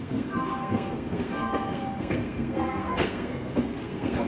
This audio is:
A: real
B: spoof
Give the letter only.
B